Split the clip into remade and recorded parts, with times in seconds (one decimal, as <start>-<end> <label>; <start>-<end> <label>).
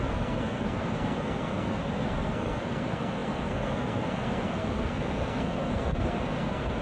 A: 0.0-6.8 remade